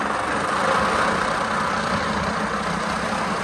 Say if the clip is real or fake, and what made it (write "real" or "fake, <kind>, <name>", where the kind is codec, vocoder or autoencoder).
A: real